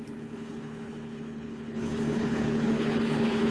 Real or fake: fake